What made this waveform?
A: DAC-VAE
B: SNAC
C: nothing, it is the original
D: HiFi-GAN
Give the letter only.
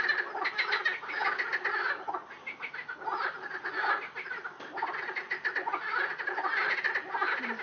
C